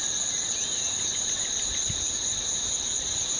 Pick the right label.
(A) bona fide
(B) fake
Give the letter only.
A